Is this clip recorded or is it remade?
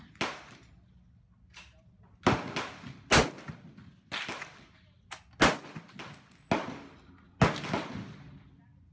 recorded